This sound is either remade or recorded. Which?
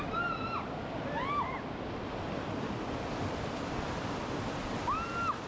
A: recorded